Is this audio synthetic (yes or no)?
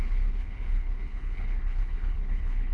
yes